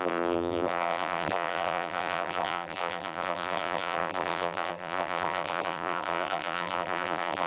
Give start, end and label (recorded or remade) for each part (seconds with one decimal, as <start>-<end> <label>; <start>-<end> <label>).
0.0-7.5 remade